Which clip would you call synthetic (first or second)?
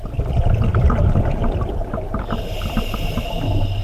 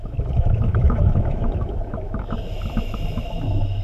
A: second